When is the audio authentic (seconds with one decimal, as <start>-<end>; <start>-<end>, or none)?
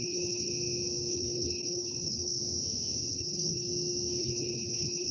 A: 0.5-1.1; 2.4-3.1; 3.7-4.2